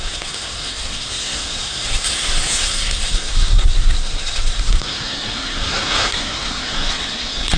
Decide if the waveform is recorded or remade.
remade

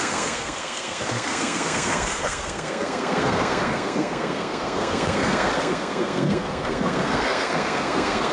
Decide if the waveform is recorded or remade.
remade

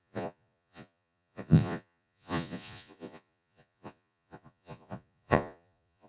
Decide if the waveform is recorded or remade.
remade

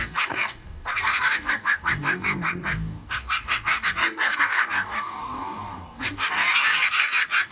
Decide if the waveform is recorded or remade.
remade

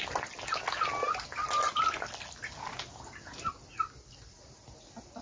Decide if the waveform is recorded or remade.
recorded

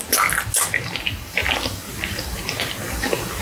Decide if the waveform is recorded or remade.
recorded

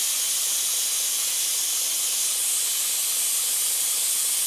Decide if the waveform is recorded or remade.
recorded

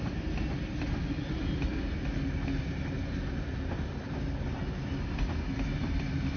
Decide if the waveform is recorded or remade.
recorded